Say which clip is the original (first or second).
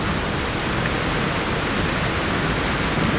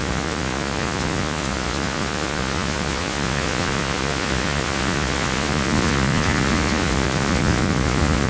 first